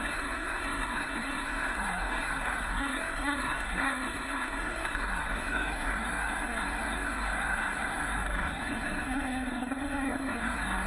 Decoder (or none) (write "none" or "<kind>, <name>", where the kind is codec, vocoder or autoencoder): codec, SNAC